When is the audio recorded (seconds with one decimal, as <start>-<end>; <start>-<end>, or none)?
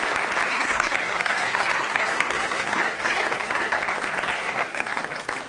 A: 0.0-0.5; 3.8-4.3; 5.0-5.5